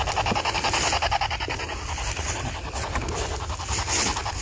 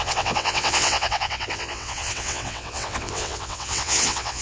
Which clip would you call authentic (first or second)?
first